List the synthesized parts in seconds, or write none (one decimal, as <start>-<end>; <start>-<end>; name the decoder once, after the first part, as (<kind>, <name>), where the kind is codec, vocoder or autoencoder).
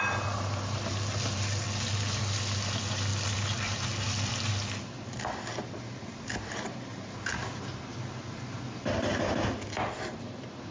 none